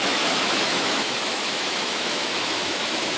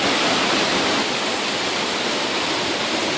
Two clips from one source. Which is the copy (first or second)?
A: first